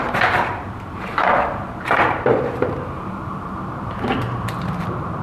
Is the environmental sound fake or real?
fake